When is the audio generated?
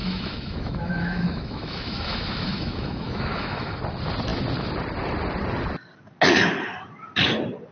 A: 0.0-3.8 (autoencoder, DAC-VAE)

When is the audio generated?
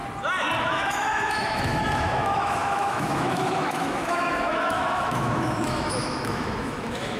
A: 0.6-7.2 (autoencoder, DAC-VAE)